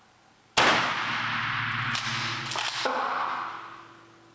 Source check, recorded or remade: recorded